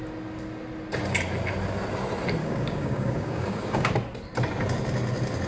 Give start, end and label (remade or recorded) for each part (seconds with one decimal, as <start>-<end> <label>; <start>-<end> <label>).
0.0-2.4 recorded; 2.4-3.9 remade; 3.9-5.5 recorded